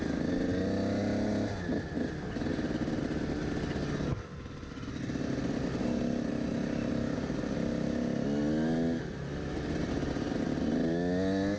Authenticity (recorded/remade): recorded